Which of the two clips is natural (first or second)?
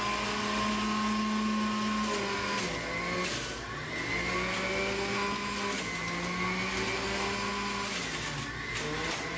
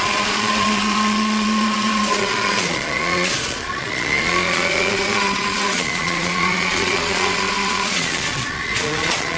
first